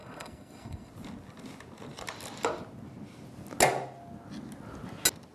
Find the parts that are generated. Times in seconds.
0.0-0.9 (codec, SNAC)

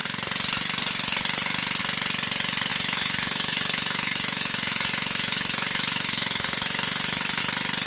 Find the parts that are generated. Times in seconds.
2.7-7.4 (autoencoder, DAC-VAE)

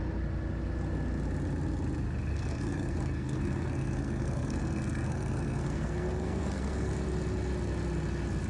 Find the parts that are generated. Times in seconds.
2.3-6.9 (codec, SNAC)

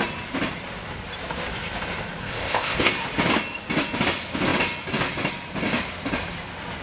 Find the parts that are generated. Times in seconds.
2.2-2.9 (codec, ZipCodec)

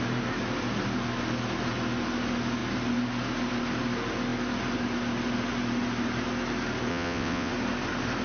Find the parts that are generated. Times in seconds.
6.9-7.5 (vocoder, WaveNeXt)